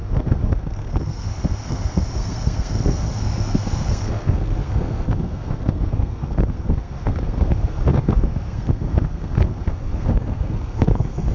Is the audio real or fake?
fake